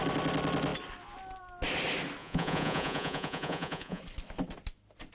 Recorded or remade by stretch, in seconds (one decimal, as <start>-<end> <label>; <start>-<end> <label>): 0.0-2.2 recorded; 2.2-4.0 remade; 4.0-5.1 recorded